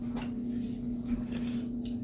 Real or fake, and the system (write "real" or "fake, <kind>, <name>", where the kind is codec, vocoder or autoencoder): real